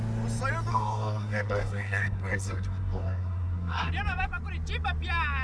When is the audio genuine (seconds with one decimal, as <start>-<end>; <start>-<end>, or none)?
0.0-0.7; 3.9-5.4